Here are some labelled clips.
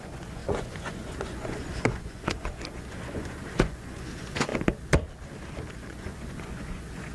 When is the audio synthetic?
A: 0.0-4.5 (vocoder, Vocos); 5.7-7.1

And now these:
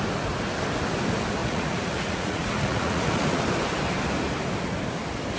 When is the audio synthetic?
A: 1.4-3.4 (vocoder, Vocos)

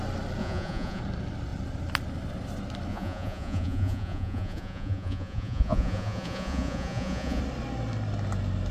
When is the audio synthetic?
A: 0.4-1.0 (vocoder, Vocos); 2.9-7.4